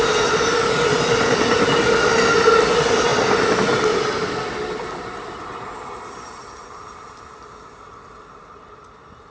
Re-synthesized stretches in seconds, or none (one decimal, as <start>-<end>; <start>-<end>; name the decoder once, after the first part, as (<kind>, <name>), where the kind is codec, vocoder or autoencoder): none